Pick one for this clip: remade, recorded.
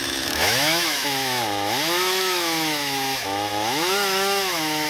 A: remade